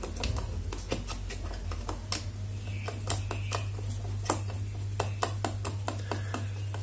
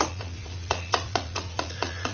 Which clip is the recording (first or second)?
first